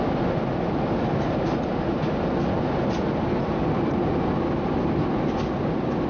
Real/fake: real